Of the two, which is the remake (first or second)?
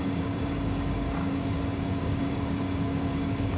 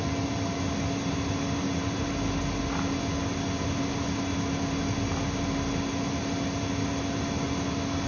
first